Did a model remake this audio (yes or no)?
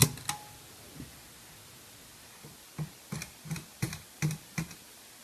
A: no